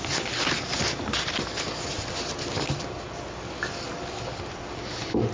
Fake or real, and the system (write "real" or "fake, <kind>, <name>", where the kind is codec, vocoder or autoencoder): real